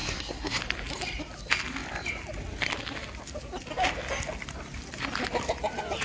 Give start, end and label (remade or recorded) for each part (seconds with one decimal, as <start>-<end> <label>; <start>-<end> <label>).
0.0-0.6 remade; 0.6-6.0 recorded